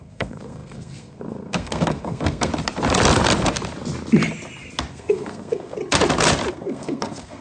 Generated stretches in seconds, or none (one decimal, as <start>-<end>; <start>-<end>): 0.0-2.5; 4.9-5.8; 6.5-7.4